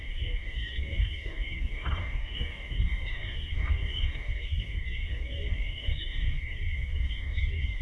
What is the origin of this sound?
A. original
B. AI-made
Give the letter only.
B